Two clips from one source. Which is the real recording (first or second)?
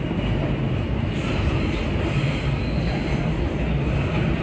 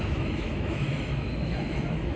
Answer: first